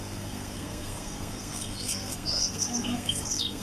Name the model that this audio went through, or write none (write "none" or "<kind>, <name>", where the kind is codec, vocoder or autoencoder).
codec, SNAC